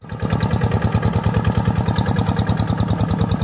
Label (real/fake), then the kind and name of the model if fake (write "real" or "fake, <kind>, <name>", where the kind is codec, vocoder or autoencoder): real